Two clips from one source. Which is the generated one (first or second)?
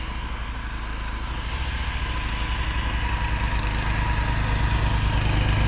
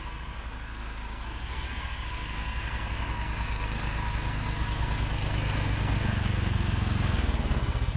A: second